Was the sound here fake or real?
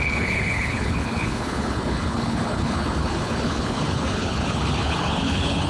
fake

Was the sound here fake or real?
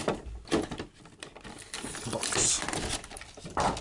real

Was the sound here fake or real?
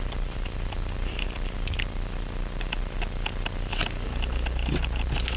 real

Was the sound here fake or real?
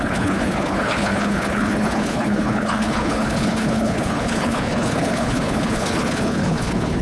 fake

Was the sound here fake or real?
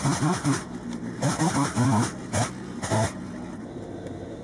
real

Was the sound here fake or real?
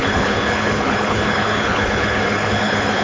fake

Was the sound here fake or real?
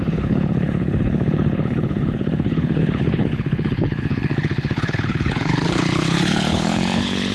fake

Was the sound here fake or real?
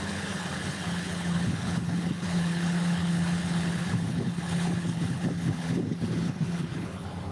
fake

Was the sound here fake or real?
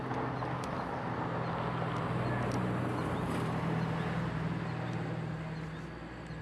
real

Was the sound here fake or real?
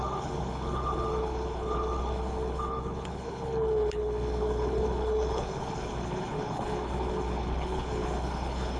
fake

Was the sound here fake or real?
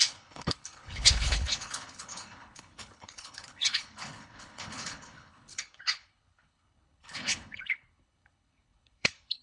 fake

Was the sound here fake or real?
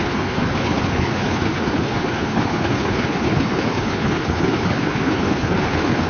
fake